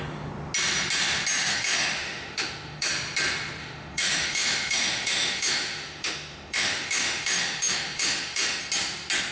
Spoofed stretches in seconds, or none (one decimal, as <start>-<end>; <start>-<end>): 1.5-2.9; 3.6-8.6